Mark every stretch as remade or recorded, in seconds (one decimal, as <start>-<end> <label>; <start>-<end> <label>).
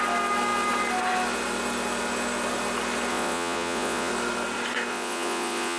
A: 0.0-3.1 recorded; 3.1-4.1 remade; 4.1-4.9 recorded; 4.9-5.8 remade